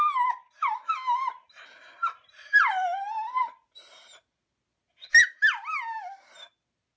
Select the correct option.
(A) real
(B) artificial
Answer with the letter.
A